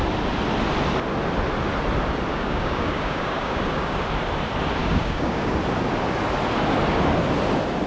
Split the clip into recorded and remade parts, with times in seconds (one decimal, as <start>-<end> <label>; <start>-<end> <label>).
0.0-2.3 recorded; 2.3-4.0 remade; 4.0-4.8 recorded; 4.8-5.5 remade; 5.5-7.9 recorded